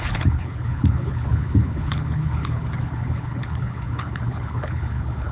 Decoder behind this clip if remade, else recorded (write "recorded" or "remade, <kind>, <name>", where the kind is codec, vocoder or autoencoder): remade, codec, HILCodec